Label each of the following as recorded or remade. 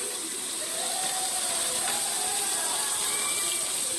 remade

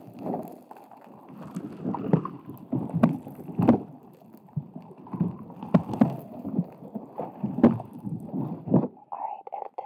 recorded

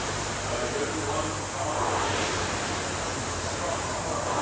recorded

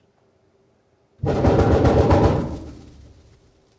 recorded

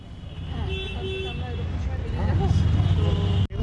recorded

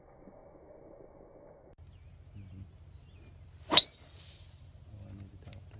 recorded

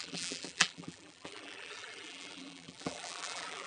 remade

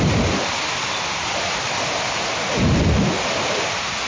recorded